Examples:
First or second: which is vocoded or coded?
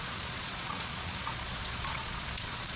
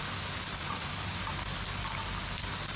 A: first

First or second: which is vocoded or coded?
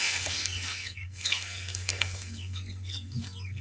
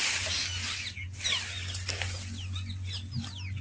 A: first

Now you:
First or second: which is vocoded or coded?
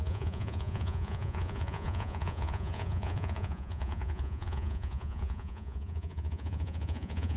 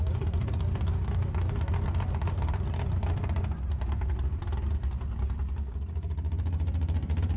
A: first